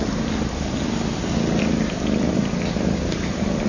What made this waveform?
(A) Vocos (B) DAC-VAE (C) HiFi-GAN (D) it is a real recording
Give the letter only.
D